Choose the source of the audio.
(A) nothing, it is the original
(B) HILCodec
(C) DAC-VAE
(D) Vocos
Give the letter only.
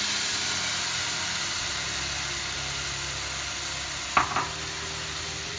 A